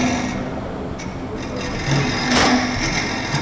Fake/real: real